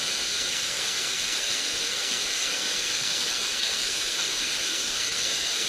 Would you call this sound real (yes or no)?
no